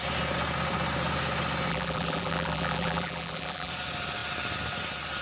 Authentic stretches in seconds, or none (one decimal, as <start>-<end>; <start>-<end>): 0.0-1.7; 3.7-5.2